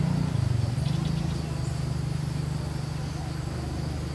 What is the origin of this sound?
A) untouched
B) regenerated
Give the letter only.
A